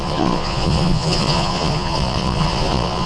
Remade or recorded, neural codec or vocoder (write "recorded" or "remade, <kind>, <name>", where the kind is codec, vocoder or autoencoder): remade, vocoder, Vocos